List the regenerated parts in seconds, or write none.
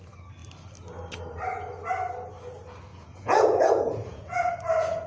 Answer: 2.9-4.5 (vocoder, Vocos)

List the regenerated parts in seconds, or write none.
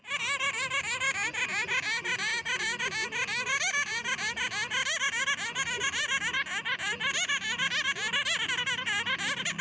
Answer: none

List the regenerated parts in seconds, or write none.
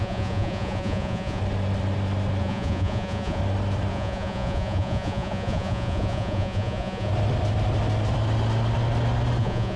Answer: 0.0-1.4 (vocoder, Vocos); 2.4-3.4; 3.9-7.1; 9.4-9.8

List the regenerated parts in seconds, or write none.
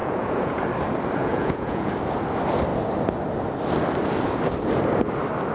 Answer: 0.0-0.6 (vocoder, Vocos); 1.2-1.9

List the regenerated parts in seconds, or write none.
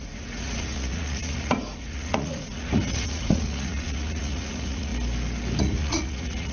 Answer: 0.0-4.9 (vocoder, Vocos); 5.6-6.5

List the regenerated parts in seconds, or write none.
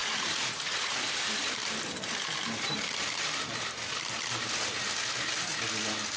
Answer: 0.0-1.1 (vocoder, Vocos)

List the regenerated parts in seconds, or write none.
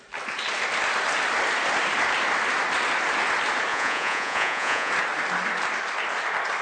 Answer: 3.7-4.9 (vocoder, Vocos)